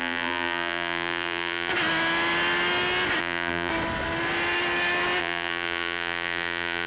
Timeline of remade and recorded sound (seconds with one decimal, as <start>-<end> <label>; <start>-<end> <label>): 0.0-1.7 remade; 1.7-3.2 recorded; 3.2-3.7 remade; 3.7-5.2 recorded; 5.2-6.9 remade